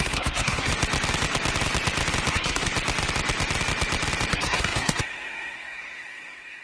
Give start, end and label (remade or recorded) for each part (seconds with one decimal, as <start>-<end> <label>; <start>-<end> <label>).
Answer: 0.0-0.7 remade; 0.7-2.3 recorded; 2.3-2.7 remade; 2.7-4.3 recorded; 4.3-6.6 remade